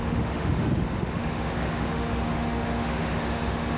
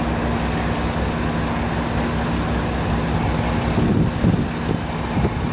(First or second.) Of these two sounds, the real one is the second